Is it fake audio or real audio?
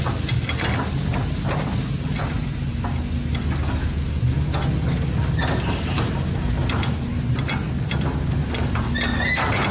real